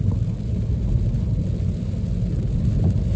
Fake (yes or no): no